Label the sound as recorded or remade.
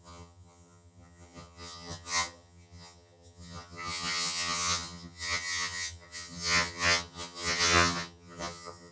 remade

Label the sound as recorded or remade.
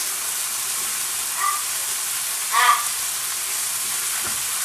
remade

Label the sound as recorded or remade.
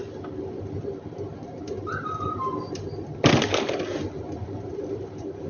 remade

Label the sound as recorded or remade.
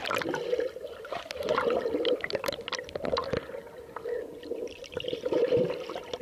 recorded